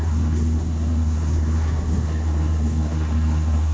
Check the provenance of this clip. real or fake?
fake